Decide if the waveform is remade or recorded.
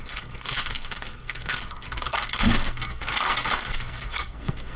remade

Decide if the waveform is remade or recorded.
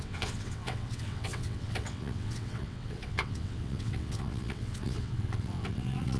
remade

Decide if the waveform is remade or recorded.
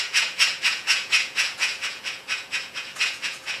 remade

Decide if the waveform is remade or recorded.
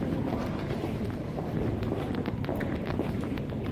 remade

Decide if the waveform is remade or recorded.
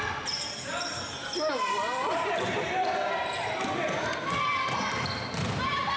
recorded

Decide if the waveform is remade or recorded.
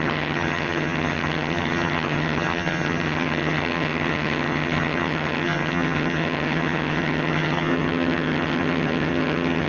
remade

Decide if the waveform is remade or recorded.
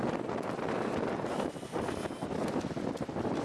recorded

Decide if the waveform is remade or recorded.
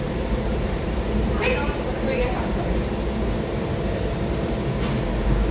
remade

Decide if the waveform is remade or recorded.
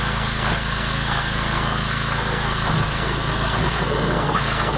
remade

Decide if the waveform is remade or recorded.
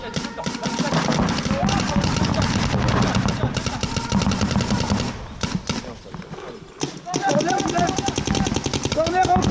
recorded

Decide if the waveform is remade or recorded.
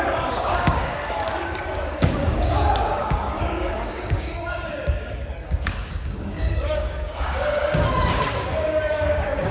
remade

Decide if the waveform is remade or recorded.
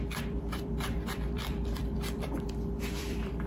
remade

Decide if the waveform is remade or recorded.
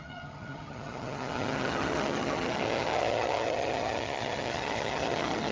remade